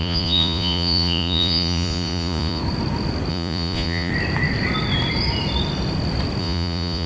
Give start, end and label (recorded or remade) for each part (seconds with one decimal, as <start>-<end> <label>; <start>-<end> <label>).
0.0-2.6 remade; 2.6-3.3 recorded; 3.3-4.1 remade; 4.1-6.4 recorded; 6.4-7.1 remade